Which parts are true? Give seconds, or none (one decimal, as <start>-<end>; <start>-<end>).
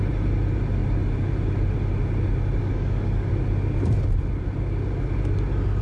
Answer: 0.0-2.6; 3.3-5.8